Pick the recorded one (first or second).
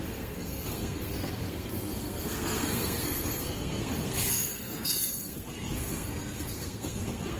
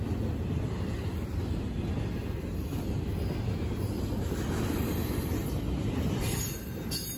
second